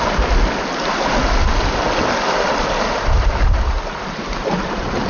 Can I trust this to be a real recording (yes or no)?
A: yes